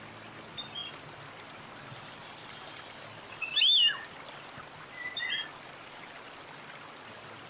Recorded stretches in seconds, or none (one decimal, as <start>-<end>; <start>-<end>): 0.0-7.5